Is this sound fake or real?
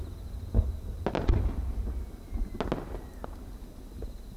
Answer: real